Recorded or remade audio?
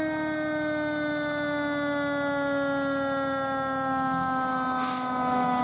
recorded